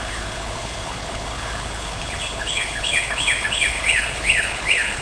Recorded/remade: remade